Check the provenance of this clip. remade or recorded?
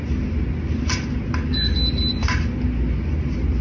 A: recorded